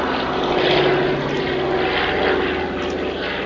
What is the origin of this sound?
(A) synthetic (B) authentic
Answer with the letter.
B